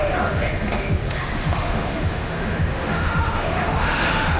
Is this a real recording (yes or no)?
no